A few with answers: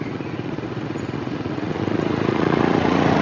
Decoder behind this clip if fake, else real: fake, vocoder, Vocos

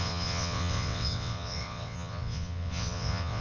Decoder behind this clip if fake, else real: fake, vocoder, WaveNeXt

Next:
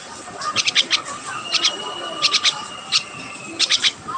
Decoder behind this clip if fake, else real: real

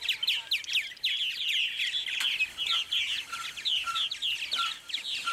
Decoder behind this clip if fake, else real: real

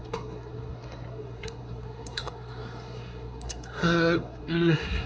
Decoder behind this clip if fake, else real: fake, codec, SNAC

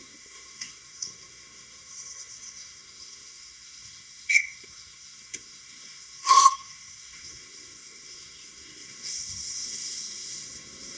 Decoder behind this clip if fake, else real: fake, codec, SNAC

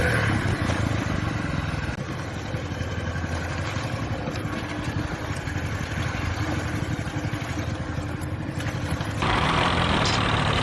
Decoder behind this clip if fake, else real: real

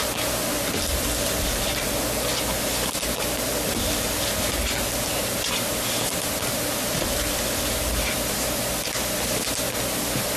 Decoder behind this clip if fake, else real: real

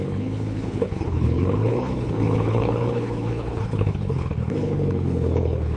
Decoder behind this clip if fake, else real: fake, codec, HILCodec